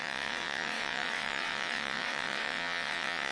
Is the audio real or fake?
fake